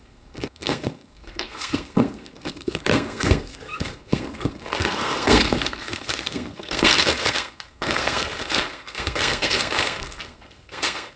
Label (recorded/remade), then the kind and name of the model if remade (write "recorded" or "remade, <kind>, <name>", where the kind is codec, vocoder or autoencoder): remade, codec, SNAC